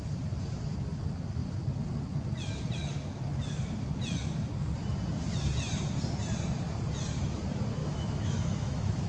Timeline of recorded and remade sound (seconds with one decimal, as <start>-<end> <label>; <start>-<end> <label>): 0.0-7.8 recorded; 7.8-9.1 remade